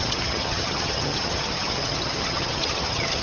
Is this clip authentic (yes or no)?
no